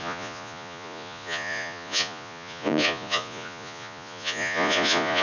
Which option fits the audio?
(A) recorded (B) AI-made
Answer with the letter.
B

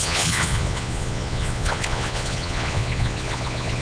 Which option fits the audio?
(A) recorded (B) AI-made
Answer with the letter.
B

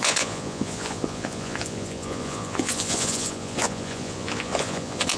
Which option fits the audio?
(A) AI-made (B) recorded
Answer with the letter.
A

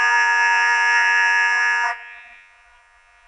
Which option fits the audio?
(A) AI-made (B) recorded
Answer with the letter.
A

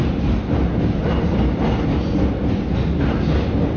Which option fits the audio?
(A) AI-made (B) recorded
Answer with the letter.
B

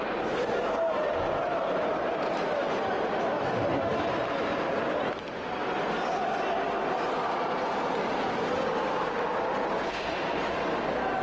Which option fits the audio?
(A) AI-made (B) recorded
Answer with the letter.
B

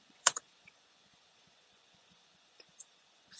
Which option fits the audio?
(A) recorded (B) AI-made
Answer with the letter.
B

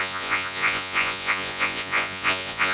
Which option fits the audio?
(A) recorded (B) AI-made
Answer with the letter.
B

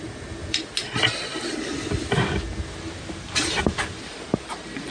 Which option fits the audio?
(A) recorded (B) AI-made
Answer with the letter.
A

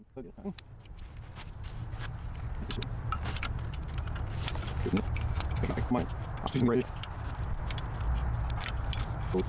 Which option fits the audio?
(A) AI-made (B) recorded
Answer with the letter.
B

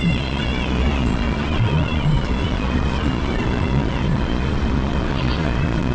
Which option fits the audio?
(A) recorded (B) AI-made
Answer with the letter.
B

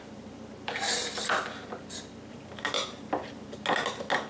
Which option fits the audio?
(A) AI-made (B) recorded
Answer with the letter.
B